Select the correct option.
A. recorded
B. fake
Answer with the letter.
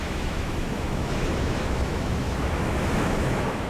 B